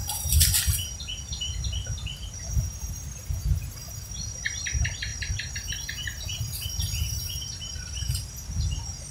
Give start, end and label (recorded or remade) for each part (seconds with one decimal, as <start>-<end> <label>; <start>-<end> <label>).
0.0-0.6 remade; 0.6-9.1 recorded